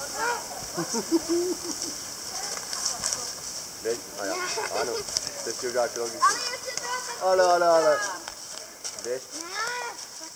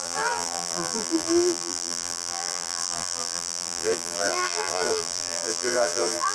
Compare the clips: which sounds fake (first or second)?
second